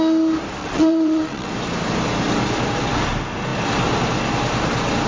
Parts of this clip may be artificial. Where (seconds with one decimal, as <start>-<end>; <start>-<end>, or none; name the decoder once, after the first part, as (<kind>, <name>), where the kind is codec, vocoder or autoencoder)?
0.6-1.5 (vocoder, WaveNeXt)